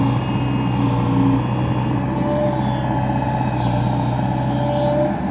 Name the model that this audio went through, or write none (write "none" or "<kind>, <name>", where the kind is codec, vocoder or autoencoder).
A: none